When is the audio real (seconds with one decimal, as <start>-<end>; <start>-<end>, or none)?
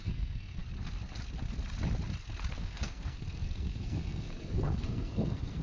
0.6-2.6